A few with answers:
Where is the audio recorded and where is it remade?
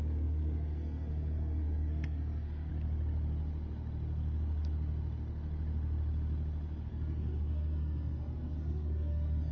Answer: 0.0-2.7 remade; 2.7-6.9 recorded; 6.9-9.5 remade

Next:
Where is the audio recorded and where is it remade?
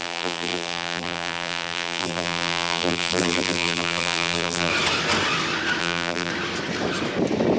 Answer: 0.0-4.7 remade; 4.7-5.8 recorded; 5.8-6.3 remade; 6.3-7.6 recorded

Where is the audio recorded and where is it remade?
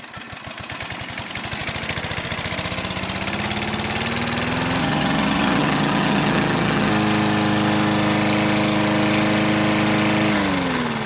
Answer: 0.0-4.8 recorded; 4.8-6.9 remade; 6.9-11.1 recorded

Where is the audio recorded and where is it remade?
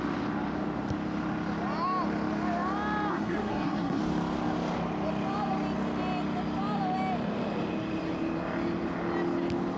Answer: 0.0-3.1 recorded; 3.1-4.0 remade; 4.0-9.8 recorded